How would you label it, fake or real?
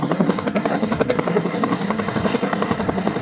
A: fake